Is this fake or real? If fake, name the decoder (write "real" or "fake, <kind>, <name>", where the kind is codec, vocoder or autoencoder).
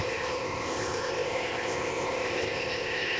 fake, codec, ZipCodec